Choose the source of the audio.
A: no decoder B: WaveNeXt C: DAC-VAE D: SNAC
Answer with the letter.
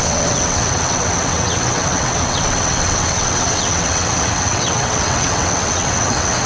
B